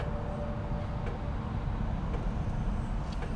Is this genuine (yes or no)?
yes